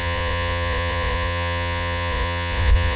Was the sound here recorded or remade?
remade